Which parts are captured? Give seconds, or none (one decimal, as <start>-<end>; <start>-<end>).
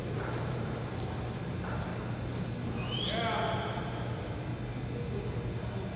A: 1.9-3.8; 4.5-5.2